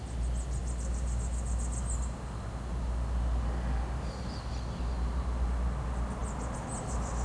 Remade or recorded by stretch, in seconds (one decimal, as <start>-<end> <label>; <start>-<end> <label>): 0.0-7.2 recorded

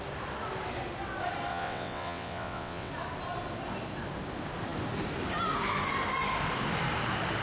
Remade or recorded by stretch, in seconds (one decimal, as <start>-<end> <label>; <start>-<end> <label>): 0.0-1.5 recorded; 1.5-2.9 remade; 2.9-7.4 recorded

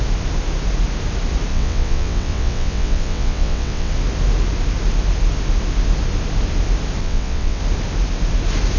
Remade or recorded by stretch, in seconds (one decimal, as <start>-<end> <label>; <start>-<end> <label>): 0.0-1.5 recorded; 1.5-3.9 remade; 3.9-7.0 recorded; 7.0-7.6 remade; 7.6-8.8 recorded

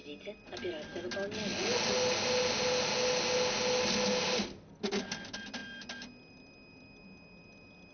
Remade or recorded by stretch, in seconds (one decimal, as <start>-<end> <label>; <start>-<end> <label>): 0.0-7.9 recorded